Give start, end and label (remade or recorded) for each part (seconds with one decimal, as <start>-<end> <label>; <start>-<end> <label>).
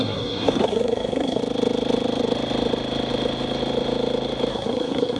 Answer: 0.0-1.4 remade; 1.4-4.5 recorded; 4.5-5.2 remade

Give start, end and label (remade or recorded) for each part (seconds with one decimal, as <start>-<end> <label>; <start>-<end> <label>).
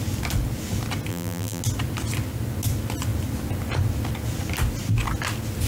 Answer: 0.0-1.1 recorded; 1.1-1.6 remade; 1.6-5.7 recorded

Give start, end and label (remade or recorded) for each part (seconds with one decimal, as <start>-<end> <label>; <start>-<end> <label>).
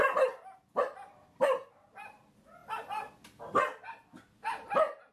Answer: 0.0-5.1 recorded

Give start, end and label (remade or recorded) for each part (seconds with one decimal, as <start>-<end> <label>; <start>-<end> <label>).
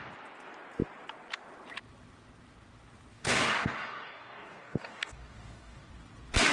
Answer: 0.0-3.1 recorded; 3.1-5.9 remade; 5.9-6.5 recorded